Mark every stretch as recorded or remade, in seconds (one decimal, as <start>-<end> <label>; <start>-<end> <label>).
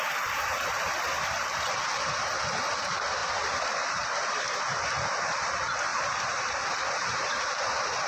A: 0.0-3.2 recorded; 3.2-4.1 remade; 4.1-5.9 recorded; 5.9-7.4 remade; 7.4-8.1 recorded